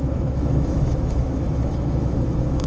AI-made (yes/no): yes